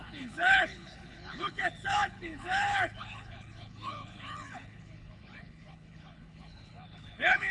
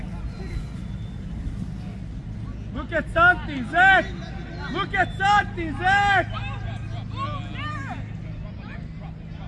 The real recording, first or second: second